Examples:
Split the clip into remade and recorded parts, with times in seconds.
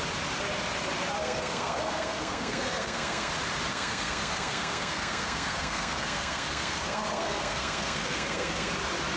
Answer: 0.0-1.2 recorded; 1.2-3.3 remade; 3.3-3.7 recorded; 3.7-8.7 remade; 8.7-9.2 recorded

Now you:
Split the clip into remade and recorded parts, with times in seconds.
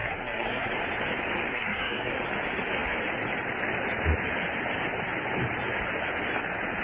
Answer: 0.0-0.7 remade; 0.7-1.5 recorded; 1.5-2.1 remade; 2.1-6.8 recorded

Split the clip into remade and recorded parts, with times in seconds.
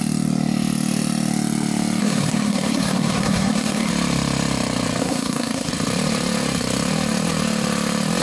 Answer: 0.0-2.0 recorded; 2.0-3.9 remade; 3.9-5.0 recorded; 5.0-5.7 remade; 5.7-8.2 recorded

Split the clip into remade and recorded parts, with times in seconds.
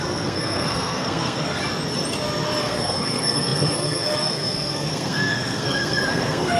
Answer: 0.0-1.6 remade; 1.6-2.6 recorded; 2.6-6.6 remade